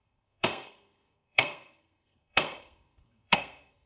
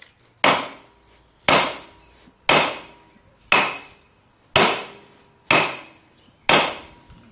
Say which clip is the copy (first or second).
first